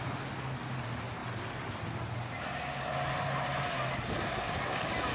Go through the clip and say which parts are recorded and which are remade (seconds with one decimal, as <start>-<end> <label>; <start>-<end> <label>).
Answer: 0.0-5.1 recorded